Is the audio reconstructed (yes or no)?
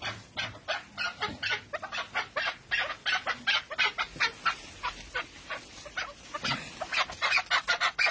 no